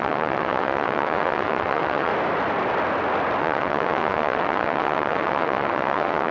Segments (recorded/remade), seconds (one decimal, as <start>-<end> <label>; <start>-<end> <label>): 0.0-2.1 remade; 2.1-3.4 recorded; 3.4-6.3 remade